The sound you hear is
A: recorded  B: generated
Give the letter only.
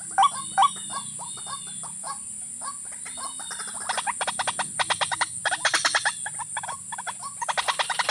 A